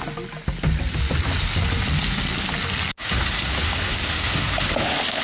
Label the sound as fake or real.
real